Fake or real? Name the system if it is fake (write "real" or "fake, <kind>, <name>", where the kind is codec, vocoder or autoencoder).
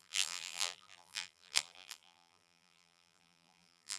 fake, vocoder, BigVGAN v2